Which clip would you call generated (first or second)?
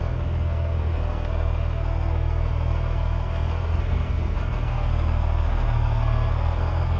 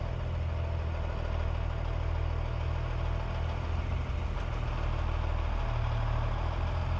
first